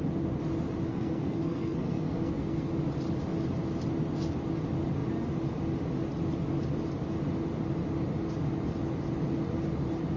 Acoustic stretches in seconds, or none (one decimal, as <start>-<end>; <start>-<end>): 0.0-0.9; 2.7-10.2